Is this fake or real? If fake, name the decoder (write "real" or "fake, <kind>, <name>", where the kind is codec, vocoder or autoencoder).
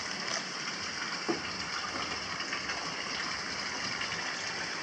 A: real